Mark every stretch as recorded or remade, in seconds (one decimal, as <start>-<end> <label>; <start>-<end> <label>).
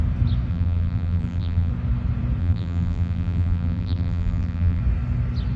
0.0-0.5 recorded; 0.5-1.7 remade; 1.7-2.4 recorded; 2.4-4.8 remade; 4.8-5.6 recorded